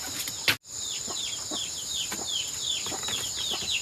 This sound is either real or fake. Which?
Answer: real